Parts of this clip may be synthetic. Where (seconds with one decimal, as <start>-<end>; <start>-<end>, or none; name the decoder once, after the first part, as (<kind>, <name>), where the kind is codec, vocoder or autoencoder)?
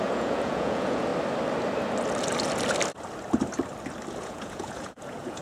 0.0-1.1 (vocoder, Vocos); 4.1-5.4